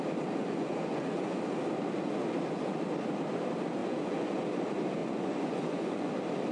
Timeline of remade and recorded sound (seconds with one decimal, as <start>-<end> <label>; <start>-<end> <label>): 0.0-0.4 recorded; 0.4-1.4 remade; 1.4-3.8 recorded; 3.8-4.4 remade; 4.4-5.0 recorded; 5.0-6.1 remade; 6.1-6.5 recorded